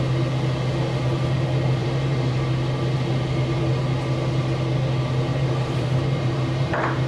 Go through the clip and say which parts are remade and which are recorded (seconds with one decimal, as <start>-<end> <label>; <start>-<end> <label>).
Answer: 0.0-1.8 recorded; 1.8-2.5 remade; 2.5-5.3 recorded; 5.3-7.1 remade